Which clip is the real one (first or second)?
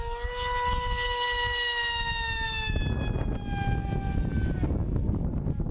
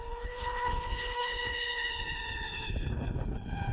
first